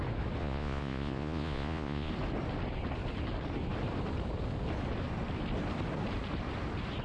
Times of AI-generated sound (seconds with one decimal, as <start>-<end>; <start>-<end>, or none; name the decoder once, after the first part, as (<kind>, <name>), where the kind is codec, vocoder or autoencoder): 0.4-2.1 (vocoder, Vocos)